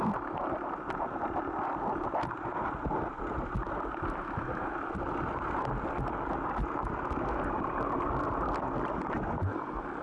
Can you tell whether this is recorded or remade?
recorded